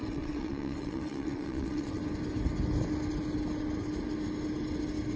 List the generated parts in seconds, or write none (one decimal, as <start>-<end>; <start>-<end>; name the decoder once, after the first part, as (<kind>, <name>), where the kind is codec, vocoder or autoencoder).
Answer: 0.0-2.0 (vocoder, WaveNeXt)